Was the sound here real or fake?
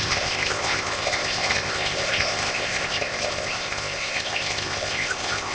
fake